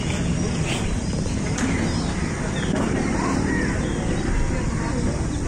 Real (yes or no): yes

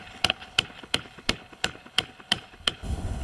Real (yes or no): no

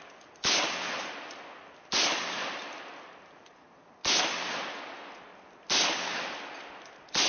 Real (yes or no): yes